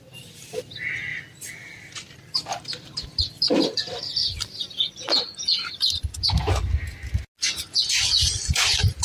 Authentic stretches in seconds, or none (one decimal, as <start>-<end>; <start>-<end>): 0.0-9.0